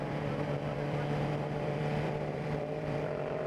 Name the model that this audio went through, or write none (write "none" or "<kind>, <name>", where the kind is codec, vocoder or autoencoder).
vocoder, BigVGAN v2